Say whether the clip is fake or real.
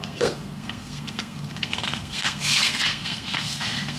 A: fake